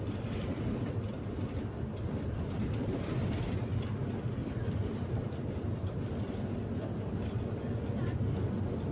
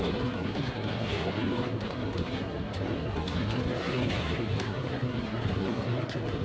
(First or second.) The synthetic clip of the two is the second